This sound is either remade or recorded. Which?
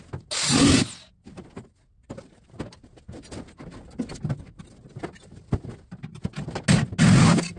recorded